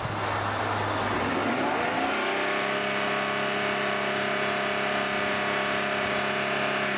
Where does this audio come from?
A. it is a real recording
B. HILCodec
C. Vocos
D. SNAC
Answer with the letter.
A